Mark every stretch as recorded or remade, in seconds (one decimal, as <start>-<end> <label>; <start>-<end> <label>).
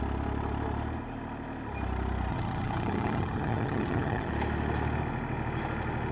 0.0-2.3 recorded; 2.3-4.3 remade; 4.3-6.1 recorded